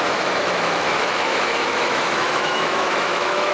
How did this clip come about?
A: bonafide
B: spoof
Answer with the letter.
B